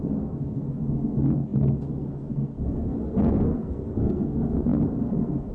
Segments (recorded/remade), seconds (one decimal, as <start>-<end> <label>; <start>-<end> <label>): 0.0-5.5 remade